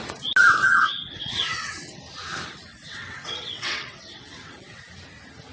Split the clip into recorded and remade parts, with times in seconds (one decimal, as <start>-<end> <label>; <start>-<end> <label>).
0.0-0.6 recorded; 0.6-2.0 remade; 2.0-2.7 recorded; 2.7-4.8 remade; 4.8-5.5 recorded